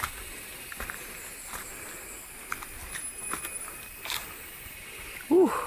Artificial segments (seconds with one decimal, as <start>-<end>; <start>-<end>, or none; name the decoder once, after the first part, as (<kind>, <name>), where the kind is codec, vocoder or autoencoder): none